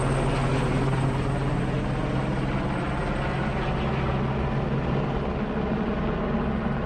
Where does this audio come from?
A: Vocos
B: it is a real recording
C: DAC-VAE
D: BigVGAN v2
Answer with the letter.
B